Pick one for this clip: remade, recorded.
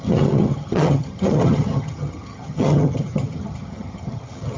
remade